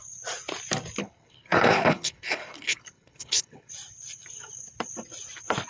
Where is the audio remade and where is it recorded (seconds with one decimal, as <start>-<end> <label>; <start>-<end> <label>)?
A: 0.0-1.0 recorded; 1.0-3.7 remade; 3.7-5.7 recorded